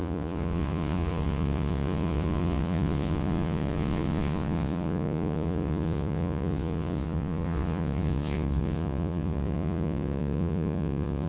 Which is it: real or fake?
fake